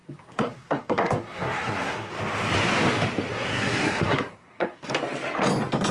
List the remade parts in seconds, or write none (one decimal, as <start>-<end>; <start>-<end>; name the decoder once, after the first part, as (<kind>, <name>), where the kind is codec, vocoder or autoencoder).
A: 0.0-2.1 (codec, SNAC); 3.3-4.9